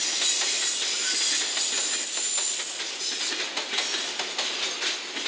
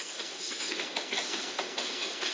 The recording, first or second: first